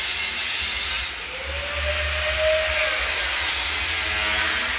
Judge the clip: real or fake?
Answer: real